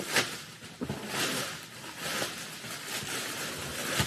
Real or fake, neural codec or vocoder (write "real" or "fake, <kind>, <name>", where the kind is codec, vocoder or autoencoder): real